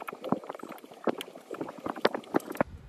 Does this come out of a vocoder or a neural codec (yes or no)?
no